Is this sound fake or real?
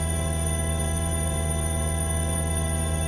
fake